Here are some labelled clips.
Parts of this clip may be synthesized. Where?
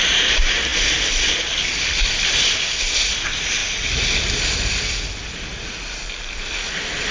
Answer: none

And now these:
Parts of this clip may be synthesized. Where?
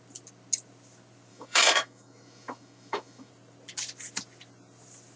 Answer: 1.3-3.3 (autoencoder, DAC-VAE)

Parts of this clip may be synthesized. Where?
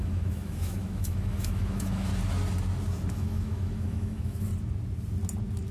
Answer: 0.0-2.1 (autoencoder, DAC-VAE); 3.1-4.5